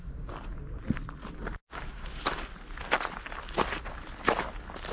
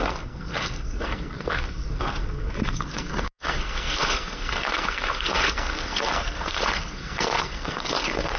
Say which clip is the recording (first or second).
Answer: first